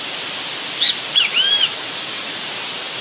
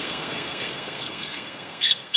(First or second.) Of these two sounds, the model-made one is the second